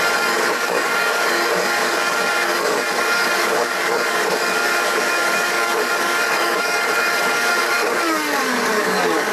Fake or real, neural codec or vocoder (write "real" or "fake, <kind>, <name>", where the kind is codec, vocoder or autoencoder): fake, codec, DAC